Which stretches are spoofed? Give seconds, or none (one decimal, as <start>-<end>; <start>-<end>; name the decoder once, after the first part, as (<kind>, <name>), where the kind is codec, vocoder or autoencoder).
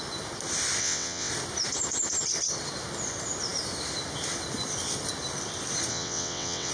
0.8-1.3 (vocoder, WaveNeXt); 5.9-6.7